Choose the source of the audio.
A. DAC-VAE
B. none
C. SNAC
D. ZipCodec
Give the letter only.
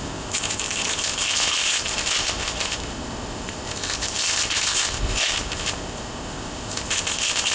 D